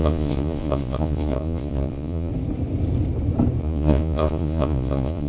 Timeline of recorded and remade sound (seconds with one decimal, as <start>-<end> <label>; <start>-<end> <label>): 0.0-2.3 remade; 2.3-3.6 recorded; 3.6-5.3 remade

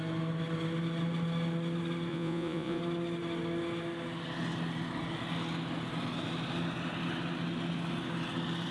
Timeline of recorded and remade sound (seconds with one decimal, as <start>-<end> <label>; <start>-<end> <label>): 0.0-2.1 recorded; 2.1-2.8 remade; 2.8-8.7 recorded